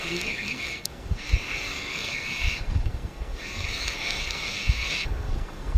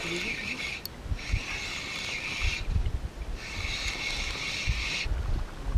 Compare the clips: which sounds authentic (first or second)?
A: second